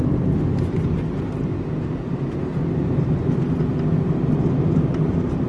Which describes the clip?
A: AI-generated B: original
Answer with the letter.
B